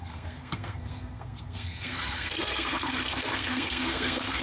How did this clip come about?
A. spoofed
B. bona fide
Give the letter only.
A